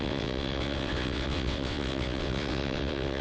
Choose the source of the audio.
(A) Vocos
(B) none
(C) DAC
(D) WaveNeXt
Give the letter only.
D